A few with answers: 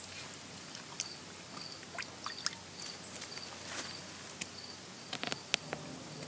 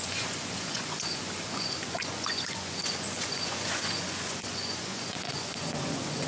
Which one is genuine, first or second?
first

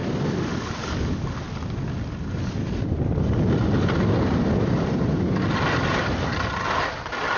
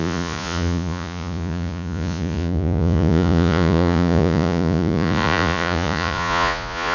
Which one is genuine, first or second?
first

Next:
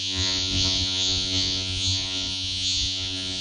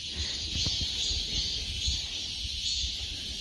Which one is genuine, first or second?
second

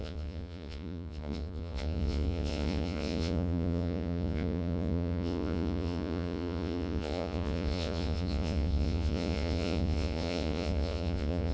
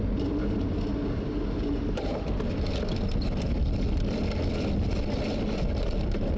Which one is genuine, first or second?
second